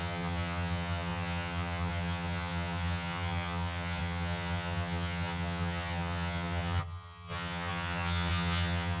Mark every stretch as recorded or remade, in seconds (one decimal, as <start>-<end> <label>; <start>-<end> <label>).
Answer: 0.0-9.0 remade